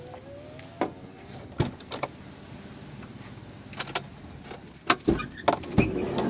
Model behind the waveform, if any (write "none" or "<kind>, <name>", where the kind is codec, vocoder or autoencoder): none